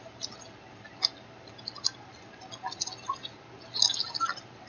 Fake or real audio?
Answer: real